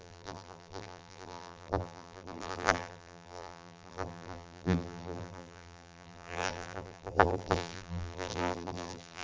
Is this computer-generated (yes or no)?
yes